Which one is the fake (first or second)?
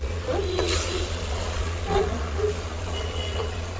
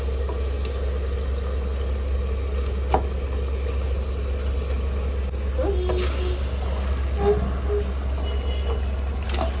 first